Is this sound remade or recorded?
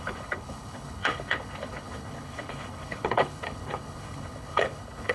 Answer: remade